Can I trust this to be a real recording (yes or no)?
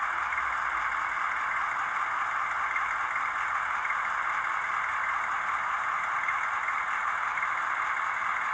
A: yes